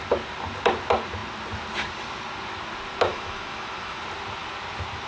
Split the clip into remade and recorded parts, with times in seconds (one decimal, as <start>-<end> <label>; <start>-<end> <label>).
0.0-3.1 recorded; 3.1-4.0 remade; 4.0-5.1 recorded